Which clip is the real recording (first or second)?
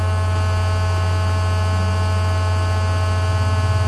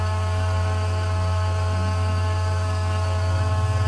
first